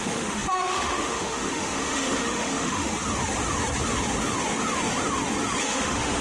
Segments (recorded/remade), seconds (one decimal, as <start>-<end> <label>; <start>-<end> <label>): 0.0-2.9 remade; 2.9-5.6 recorded; 5.6-6.2 remade